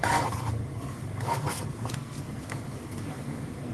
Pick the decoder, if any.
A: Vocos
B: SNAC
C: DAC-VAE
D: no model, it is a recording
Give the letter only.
B